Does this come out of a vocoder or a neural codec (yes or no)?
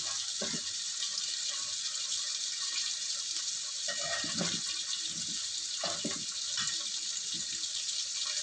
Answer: no